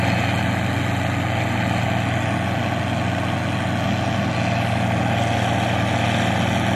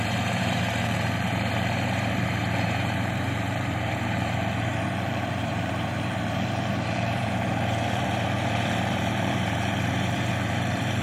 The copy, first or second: second